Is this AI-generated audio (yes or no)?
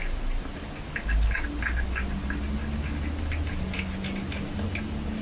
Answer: no